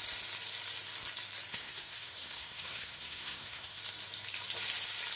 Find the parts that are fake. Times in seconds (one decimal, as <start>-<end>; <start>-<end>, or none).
1.5-3.8

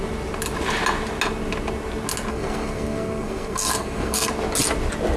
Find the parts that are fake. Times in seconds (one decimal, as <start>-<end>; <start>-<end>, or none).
2.3-4.3

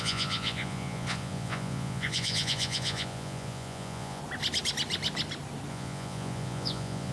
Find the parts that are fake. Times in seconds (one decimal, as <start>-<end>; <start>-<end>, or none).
0.0-4.2; 5.7-7.1

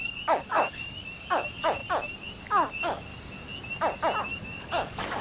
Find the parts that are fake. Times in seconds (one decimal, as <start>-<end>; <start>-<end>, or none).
0.0-1.8; 2.4-3.1; 4.2-5.2

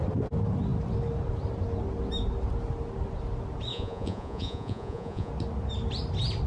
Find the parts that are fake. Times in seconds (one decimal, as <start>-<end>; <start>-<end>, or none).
3.7-5.3

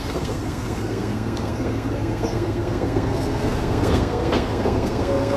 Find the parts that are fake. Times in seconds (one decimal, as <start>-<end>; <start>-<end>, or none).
0.0-5.4

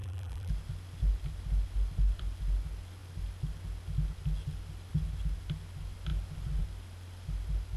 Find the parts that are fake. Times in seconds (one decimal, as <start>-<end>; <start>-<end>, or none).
0.0-0.5

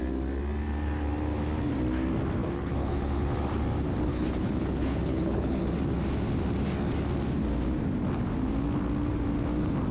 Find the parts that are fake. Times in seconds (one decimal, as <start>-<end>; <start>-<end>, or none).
2.4-3.3; 4.1-5.7